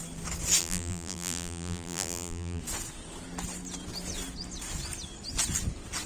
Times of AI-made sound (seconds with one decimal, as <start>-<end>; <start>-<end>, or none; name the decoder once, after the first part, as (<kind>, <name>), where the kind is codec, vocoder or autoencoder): 0.6-2.6 (vocoder, BigVGAN v2)